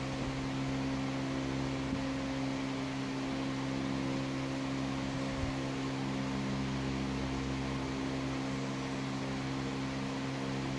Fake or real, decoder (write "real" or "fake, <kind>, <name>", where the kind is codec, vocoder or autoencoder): real